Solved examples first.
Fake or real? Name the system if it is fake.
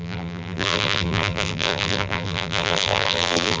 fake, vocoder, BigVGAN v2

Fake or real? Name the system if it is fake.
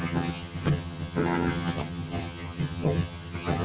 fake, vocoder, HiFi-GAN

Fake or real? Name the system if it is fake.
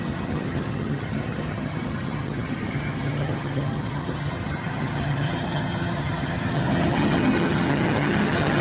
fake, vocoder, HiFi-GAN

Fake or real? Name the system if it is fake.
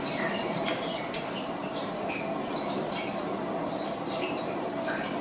fake, vocoder, BigVGAN v2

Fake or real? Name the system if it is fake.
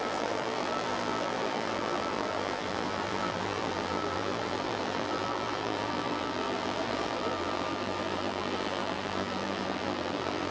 fake, vocoder, BigVGAN v2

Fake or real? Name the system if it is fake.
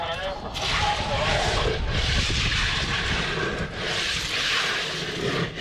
real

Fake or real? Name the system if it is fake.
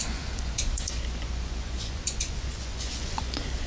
fake, vocoder, Vocos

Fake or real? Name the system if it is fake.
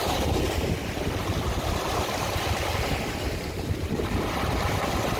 fake, vocoder, BigVGAN v2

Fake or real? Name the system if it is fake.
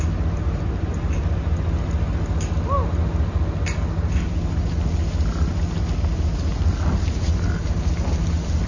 real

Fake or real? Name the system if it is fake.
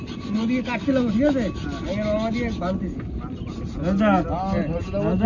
real